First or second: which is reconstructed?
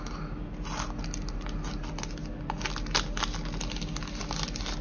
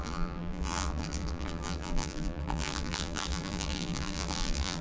second